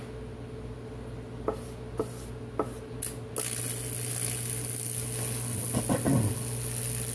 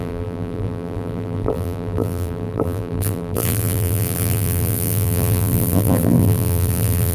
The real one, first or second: first